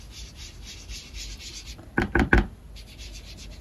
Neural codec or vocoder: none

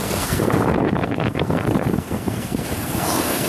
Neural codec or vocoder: codec, SNAC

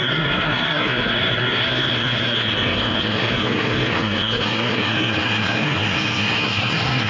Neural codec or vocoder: codec, SNAC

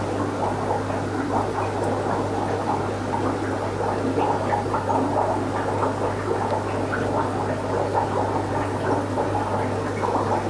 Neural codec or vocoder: none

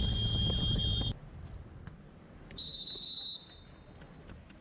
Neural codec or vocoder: none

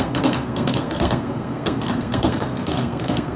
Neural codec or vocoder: codec, SNAC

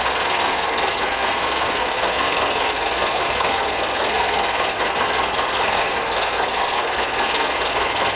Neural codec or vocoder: codec, SNAC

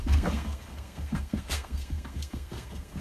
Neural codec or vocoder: codec, SNAC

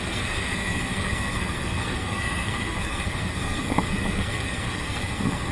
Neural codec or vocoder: codec, SNAC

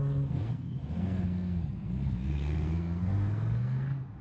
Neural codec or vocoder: codec, SNAC